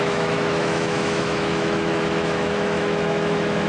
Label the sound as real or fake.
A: fake